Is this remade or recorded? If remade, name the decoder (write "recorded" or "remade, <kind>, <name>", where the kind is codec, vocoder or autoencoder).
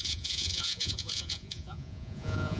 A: remade, vocoder, Vocos